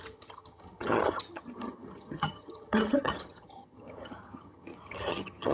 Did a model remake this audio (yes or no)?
yes